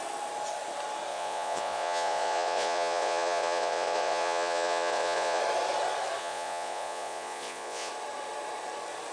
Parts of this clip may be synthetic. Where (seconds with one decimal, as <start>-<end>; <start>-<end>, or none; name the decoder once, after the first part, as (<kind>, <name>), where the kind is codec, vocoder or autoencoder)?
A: 1.1-5.4 (vocoder, Vocos); 6.2-7.9